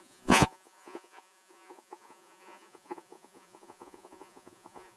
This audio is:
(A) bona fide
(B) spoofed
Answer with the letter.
B